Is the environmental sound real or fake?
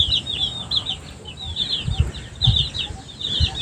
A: real